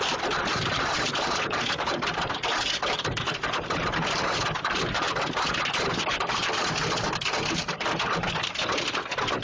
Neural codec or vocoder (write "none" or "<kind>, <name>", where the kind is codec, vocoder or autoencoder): vocoder, BigVGAN v2